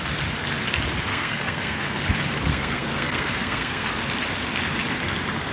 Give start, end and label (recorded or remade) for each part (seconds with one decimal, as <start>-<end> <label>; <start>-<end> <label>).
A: 0.0-1.1 recorded; 1.1-2.0 remade; 2.0-2.5 recorded; 2.5-3.9 remade; 3.9-5.5 recorded